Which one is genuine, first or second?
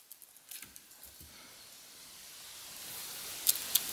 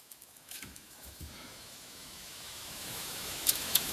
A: first